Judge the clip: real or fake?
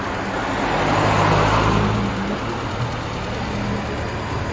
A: real